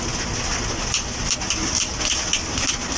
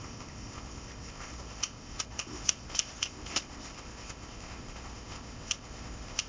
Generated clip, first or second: second